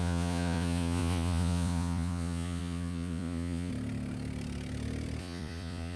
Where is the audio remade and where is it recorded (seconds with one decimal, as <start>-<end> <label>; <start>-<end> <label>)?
0.0-3.7 remade; 3.7-5.2 recorded; 5.2-6.0 remade